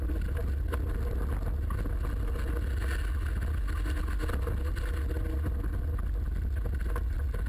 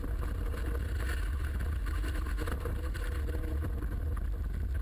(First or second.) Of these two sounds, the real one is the first